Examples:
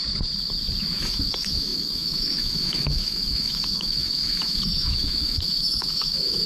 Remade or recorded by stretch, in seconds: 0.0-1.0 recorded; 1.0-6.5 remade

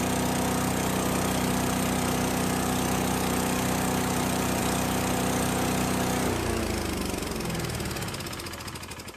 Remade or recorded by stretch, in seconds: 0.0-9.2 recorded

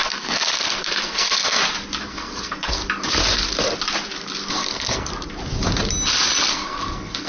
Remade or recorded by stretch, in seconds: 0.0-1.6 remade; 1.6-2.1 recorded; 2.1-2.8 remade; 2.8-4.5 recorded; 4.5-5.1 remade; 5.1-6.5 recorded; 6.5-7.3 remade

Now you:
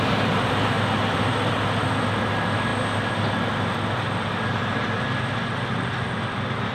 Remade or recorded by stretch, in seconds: 0.0-6.7 recorded